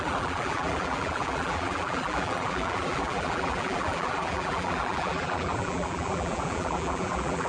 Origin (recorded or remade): remade